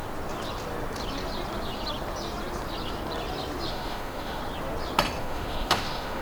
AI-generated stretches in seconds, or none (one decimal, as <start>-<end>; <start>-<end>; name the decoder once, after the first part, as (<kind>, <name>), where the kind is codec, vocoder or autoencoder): 3.7-4.4 (autoencoder, DAC-VAE); 5.2-6.2